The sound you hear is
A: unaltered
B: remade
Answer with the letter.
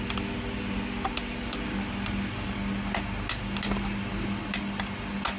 A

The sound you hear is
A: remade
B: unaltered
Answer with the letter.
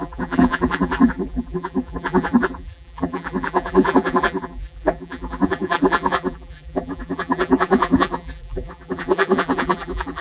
A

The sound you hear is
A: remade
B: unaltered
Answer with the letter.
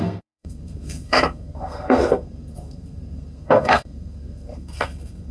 A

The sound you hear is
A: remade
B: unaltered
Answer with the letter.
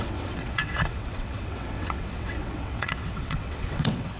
A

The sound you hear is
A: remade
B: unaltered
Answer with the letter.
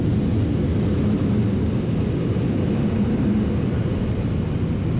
B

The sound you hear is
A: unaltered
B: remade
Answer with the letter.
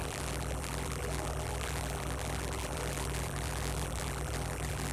B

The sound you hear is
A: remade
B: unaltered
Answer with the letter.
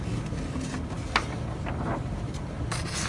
B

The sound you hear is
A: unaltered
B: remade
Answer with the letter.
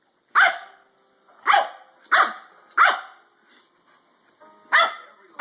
A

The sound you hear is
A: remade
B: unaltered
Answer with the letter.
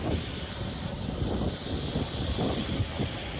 B